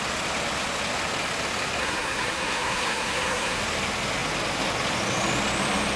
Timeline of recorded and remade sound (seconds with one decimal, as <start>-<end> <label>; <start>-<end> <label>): 0.0-1.8 recorded; 1.8-3.6 remade; 3.6-6.0 recorded